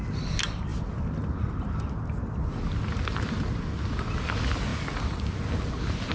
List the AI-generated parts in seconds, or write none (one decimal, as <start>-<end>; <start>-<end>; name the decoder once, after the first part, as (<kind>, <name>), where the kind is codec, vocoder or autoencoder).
none